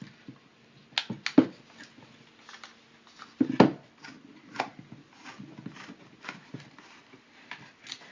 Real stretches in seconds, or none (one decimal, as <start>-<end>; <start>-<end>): 0.0-8.1